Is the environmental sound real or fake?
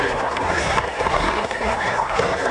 fake